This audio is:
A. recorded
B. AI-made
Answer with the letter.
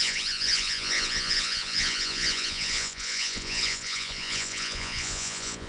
B